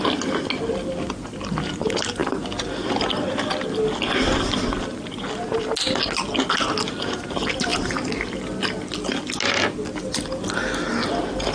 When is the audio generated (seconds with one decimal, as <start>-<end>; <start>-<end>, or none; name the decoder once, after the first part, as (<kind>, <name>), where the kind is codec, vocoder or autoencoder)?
none